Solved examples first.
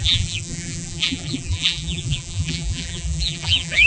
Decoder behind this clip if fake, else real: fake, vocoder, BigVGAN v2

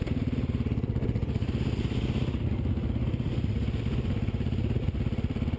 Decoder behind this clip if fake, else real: fake, vocoder, BigVGAN v2